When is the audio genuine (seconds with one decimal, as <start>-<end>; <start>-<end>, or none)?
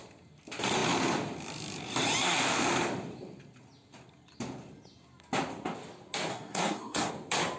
0.0-6.3; 7.1-7.6